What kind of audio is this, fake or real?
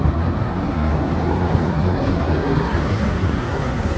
fake